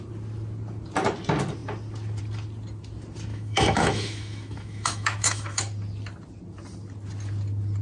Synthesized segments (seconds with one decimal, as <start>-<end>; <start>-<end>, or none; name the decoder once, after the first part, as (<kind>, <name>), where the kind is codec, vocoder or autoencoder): 3.3-5.6 (autoencoder, DAC-VAE)